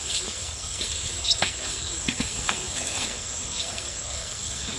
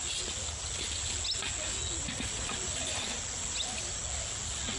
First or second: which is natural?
second